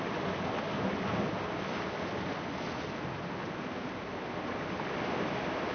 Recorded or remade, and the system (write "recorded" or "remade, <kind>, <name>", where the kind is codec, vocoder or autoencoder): recorded